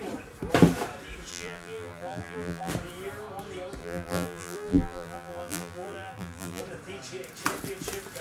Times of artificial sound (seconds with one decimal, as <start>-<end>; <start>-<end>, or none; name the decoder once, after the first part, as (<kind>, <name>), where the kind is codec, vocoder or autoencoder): 1.3-2.7 (vocoder, BigVGAN v2); 3.8-6.6